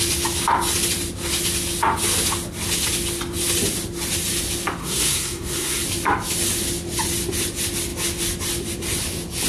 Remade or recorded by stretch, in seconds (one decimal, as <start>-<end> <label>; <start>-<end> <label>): 0.0-4.8 recorded; 4.8-5.8 remade; 5.8-9.5 recorded

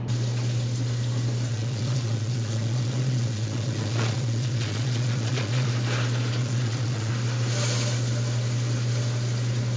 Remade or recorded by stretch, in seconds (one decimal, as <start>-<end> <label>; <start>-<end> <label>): 0.0-1.5 recorded; 1.5-5.7 remade; 5.7-6.4 recorded; 6.4-7.1 remade; 7.1-9.8 recorded

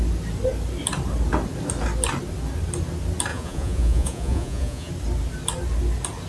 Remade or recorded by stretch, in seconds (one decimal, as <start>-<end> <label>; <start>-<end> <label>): 0.0-3.3 recorded; 3.3-4.9 remade; 4.9-6.3 recorded

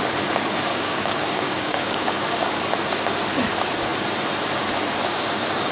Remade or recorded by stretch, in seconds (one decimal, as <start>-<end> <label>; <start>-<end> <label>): 0.0-0.7 recorded; 0.7-2.6 remade; 2.6-5.7 recorded

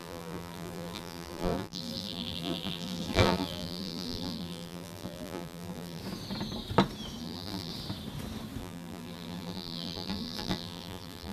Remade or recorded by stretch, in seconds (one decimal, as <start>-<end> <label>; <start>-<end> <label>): 0.0-6.0 remade; 6.0-7.2 recorded; 7.2-7.7 remade; 7.7-8.6 recorded; 8.6-11.3 remade

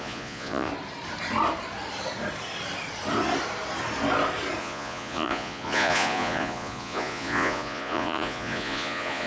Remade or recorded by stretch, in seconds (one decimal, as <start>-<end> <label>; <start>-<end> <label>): 0.0-0.7 remade; 0.7-4.6 recorded; 4.6-9.3 remade

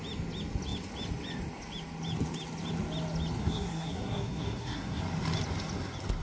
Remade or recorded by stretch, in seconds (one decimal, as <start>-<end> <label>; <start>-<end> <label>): 0.0-3.4 recorded; 3.4-5.0 remade; 5.0-6.2 recorded

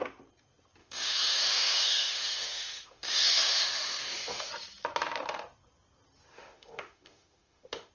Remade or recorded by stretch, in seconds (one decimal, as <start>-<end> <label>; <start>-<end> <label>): 0.0-0.8 recorded; 0.8-4.5 remade; 4.5-6.3 recorded; 6.3-7.9 remade